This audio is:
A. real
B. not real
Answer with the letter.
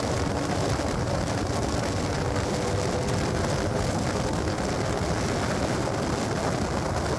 A